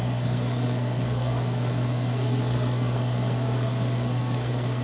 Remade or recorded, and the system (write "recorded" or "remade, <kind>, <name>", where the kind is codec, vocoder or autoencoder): remade, codec, SNAC